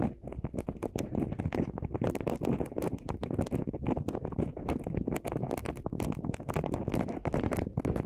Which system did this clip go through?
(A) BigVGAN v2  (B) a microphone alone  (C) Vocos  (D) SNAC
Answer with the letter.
B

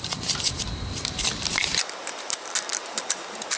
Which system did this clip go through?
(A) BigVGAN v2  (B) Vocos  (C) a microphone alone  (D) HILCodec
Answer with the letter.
C